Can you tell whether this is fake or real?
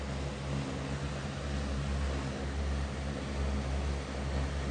real